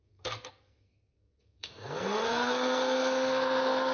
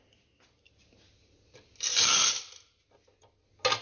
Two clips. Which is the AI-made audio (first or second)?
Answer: first